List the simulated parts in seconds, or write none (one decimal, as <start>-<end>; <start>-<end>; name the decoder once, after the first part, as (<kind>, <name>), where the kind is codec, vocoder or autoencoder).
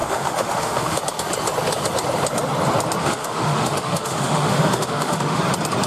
0.0-1.0 (autoencoder, DAC-VAE); 3.0-5.4